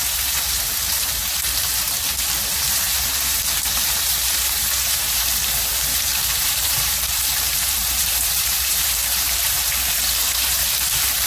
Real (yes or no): no